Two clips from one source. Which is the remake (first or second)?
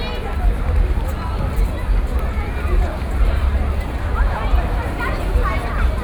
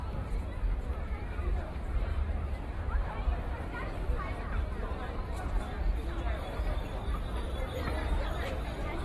second